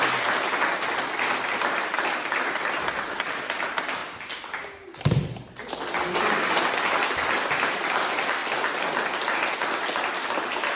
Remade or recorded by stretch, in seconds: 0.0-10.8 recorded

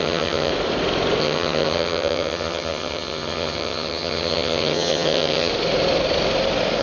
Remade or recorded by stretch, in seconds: 0.0-0.5 remade; 0.5-1.2 recorded; 1.2-5.5 remade; 5.5-6.8 recorded

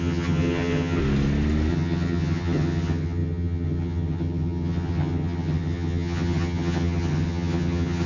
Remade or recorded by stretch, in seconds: 0.0-1.0 remade; 1.0-1.7 recorded; 1.7-8.1 remade